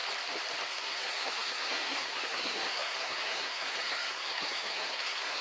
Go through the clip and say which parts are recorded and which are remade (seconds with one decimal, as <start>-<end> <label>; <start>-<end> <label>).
0.0-0.7 recorded; 0.7-5.4 remade